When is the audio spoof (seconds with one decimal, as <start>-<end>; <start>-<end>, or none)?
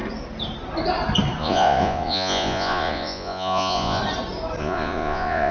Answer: 1.4-4.0; 4.6-5.5